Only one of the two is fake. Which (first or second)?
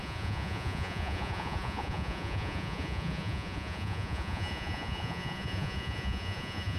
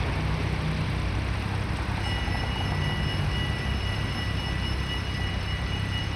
first